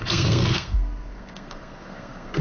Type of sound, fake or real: fake